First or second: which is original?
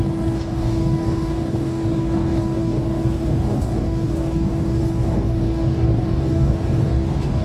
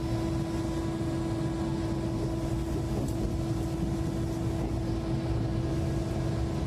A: second